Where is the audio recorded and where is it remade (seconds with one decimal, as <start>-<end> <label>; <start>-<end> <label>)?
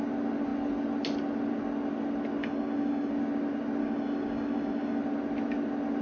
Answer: 0.0-2.4 recorded; 2.4-3.1 remade; 3.1-3.8 recorded; 3.8-5.0 remade; 5.0-6.0 recorded